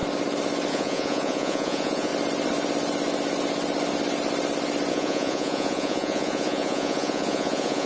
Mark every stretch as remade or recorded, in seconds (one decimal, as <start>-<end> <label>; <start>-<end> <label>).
0.0-0.7 recorded; 0.7-2.1 remade; 2.1-4.9 recorded; 4.9-7.9 remade